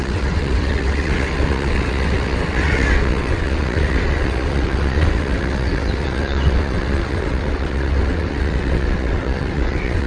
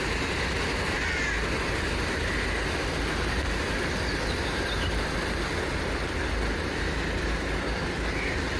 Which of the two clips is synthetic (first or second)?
first